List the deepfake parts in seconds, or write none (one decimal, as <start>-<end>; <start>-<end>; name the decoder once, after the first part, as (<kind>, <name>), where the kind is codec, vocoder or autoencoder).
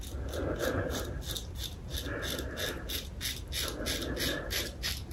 none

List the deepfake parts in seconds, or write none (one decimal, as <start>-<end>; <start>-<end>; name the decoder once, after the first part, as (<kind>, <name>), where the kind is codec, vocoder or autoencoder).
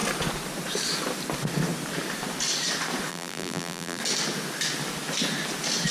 3.1-4.0 (vocoder, BigVGAN v2)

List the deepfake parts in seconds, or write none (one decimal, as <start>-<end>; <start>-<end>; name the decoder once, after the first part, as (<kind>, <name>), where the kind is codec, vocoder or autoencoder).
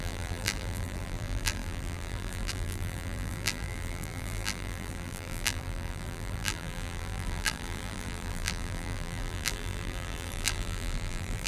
0.0-11.5 (vocoder, BigVGAN v2)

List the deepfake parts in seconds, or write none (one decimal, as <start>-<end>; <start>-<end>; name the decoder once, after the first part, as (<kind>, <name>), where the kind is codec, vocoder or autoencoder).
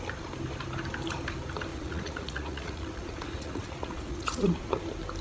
1.7-4.8 (vocoder, Vocos)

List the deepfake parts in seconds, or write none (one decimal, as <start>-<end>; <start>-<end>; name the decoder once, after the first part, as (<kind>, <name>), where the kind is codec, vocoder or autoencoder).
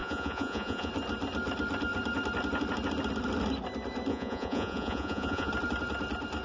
0.0-0.9 (vocoder, Vocos); 4.1-5.5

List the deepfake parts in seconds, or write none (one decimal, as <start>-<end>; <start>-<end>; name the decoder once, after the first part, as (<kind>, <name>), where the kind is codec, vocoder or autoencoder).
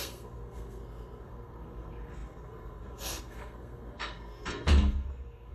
0.0-5.5 (codec, SNAC)